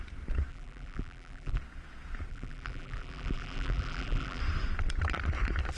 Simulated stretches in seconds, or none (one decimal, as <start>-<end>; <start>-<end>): 0.5-1.6; 2.3-4.4